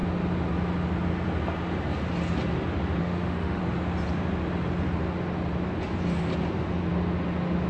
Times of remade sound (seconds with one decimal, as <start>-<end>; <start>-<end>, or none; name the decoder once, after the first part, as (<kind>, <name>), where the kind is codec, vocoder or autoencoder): 3.0-3.6 (autoencoder, DAC-VAE)